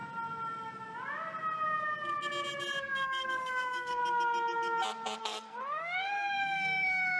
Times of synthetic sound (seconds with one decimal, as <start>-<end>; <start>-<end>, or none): 2.8-4.0; 5.2-7.2